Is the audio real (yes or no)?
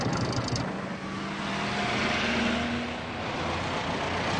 yes